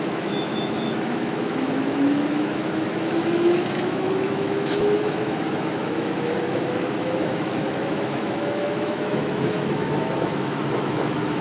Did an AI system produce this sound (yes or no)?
yes